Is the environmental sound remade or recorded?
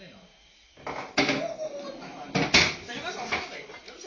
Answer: recorded